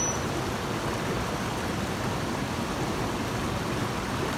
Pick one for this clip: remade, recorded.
recorded